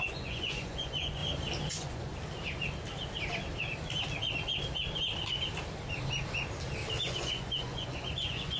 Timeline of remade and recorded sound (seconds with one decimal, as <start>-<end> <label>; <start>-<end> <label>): 0.0-1.2 remade; 1.2-1.7 recorded; 1.7-2.1 remade; 2.1-7.0 recorded; 7.0-8.6 remade